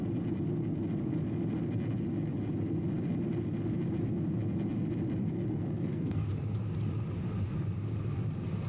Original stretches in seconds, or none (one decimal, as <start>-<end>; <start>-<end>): 0.0-5.2; 6.3-8.7